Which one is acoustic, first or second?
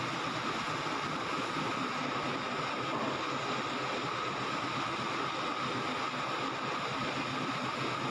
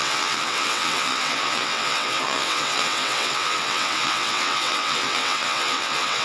first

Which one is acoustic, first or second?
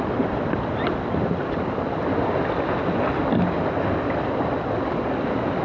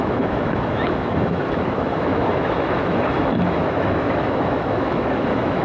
first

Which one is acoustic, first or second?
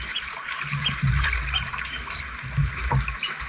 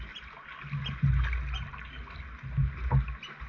second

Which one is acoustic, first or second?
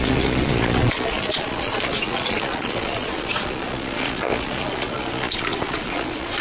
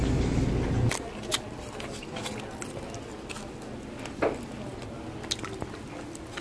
second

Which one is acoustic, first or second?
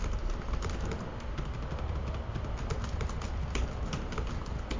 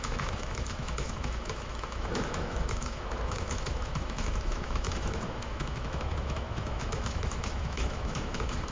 first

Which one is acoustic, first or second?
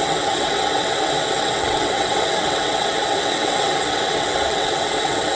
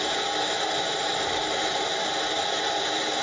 second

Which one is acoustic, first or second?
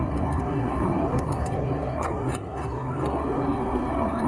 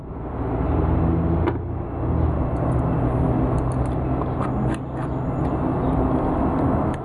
second